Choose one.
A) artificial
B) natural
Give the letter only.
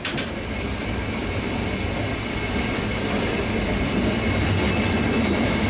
B